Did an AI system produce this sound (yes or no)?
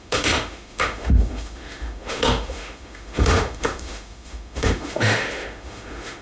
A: yes